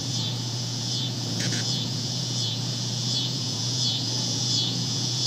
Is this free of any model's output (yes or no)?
no